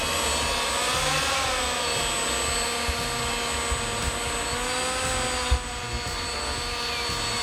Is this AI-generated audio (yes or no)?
no